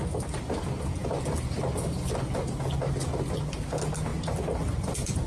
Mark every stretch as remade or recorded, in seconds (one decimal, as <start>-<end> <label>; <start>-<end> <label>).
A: 0.0-5.3 recorded